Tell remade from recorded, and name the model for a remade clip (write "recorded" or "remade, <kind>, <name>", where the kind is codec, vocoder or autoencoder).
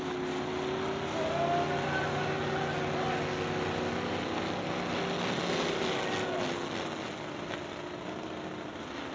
recorded